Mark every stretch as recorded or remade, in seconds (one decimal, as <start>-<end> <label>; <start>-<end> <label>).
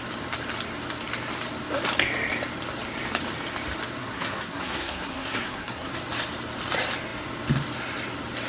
0.0-4.0 recorded; 4.0-5.9 remade; 5.9-8.5 recorded